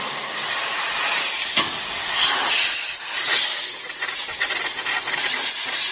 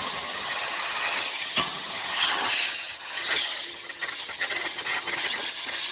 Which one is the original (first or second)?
first